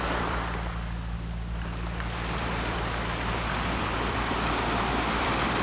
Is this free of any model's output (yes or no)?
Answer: no